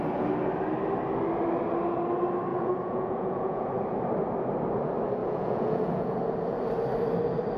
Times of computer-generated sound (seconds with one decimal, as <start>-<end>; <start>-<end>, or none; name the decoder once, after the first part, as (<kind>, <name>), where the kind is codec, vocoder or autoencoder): 2.5-3.7 (vocoder, Vocos); 5.2-6.2